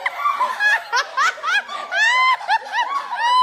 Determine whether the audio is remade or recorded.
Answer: recorded